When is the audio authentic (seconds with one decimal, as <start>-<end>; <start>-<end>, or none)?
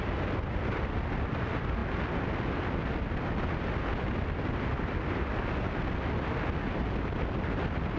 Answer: 0.0-8.0